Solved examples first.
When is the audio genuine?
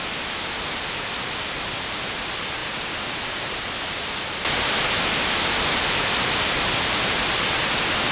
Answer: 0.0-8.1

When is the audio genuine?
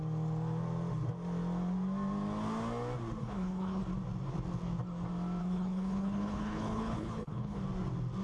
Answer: 0.0-3.2; 3.8-5.4; 7.6-8.2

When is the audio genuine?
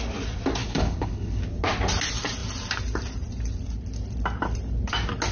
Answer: 0.0-0.6; 1.4-5.3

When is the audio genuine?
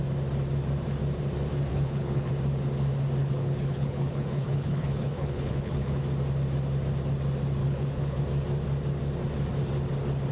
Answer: 0.0-1.7; 2.3-3.2; 6.0-7.6; 8.2-10.3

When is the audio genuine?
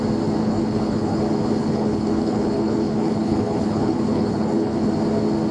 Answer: 0.0-0.4; 1.2-1.6; 4.9-5.5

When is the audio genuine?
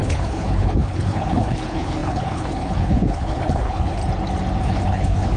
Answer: 4.0-4.6